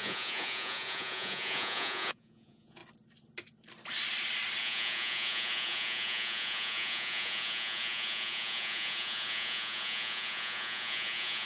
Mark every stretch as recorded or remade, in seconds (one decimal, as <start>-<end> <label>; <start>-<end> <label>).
0.0-2.8 remade; 2.8-4.6 recorded; 4.6-11.5 remade

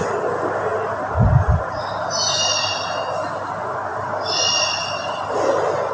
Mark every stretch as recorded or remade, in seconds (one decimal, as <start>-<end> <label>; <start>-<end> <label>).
0.0-3.9 recorded; 3.9-4.6 remade; 4.6-5.9 recorded

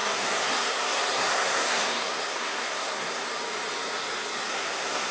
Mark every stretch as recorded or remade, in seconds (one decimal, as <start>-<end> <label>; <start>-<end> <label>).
0.0-3.3 remade; 3.3-4.5 recorded; 4.5-5.1 remade

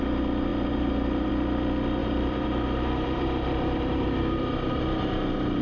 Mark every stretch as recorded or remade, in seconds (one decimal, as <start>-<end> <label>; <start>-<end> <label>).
0.0-0.5 recorded; 0.5-1.3 remade; 1.3-2.0 recorded; 2.0-5.6 remade

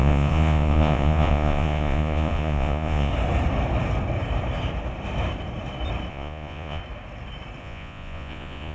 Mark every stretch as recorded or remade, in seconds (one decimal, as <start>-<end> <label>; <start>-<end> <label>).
0.0-3.1 remade; 3.1-6.1 recorded; 6.1-6.8 remade; 6.8-7.6 recorded; 7.6-8.7 remade

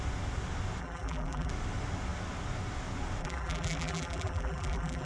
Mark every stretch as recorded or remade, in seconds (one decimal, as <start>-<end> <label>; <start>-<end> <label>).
0.0-0.8 recorded; 0.8-1.5 remade; 1.5-3.2 recorded; 3.2-5.1 remade

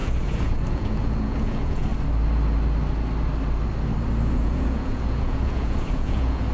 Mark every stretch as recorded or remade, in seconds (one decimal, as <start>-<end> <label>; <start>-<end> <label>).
0.0-1.9 remade; 1.9-4.3 recorded; 4.3-6.5 remade

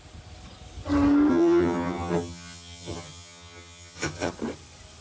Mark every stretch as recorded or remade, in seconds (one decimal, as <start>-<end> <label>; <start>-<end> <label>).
0.0-1.3 recorded; 1.3-4.3 remade; 4.3-5.0 recorded